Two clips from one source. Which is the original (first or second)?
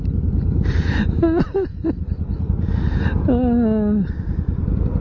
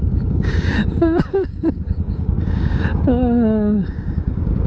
first